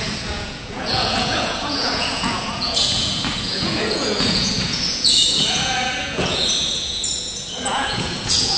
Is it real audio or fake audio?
fake